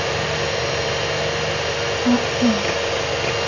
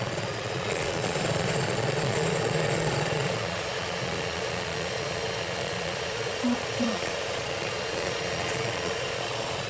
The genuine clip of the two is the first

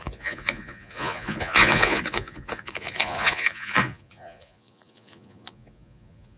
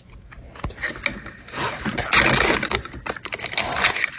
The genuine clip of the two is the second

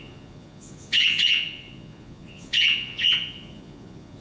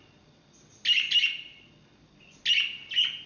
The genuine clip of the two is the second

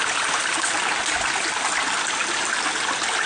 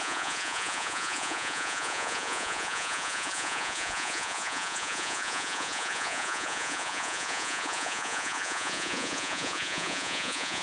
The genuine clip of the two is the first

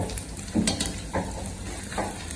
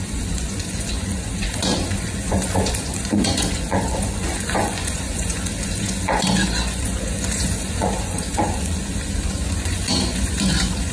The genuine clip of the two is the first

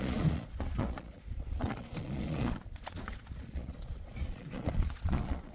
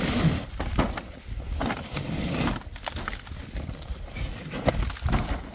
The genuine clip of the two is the second